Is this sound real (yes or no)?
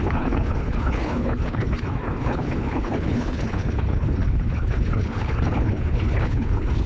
no